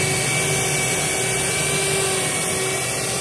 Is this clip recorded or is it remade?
recorded